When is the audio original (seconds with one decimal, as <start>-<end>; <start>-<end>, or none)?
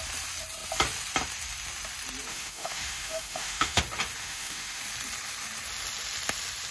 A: 0.0-2.3; 3.8-4.2; 4.8-6.7